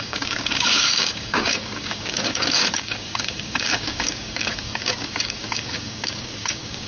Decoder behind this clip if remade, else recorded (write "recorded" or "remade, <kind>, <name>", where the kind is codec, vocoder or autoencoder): remade, codec, DAC